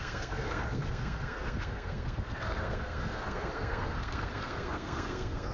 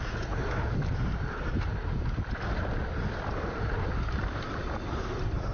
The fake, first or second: first